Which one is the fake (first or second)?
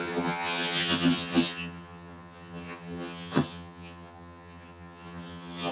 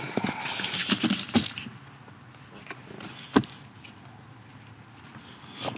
first